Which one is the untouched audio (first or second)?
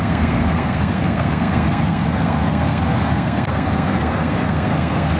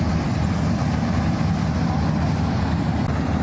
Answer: second